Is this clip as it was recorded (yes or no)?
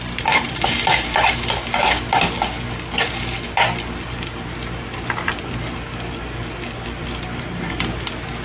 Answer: yes